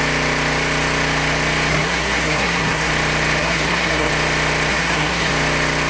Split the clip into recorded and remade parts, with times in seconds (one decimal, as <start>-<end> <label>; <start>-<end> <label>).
0.0-1.7 recorded; 1.7-2.9 remade; 2.9-3.4 recorded; 3.4-4.1 remade; 4.1-4.7 recorded; 4.7-5.3 remade; 5.3-5.9 recorded